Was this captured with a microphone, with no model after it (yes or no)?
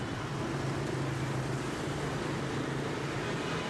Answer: yes